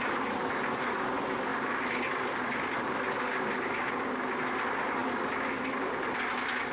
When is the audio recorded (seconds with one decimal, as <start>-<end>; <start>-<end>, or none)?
0.0-5.0; 5.6-6.7